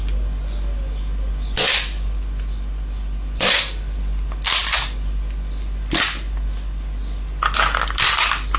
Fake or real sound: real